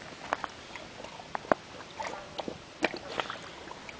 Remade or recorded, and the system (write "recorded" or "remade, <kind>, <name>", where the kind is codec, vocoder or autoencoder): recorded